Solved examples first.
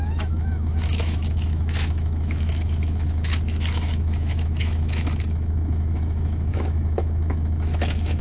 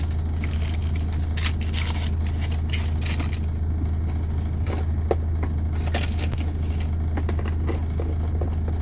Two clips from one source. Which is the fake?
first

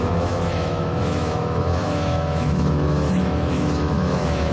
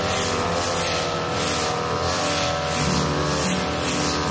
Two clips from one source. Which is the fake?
first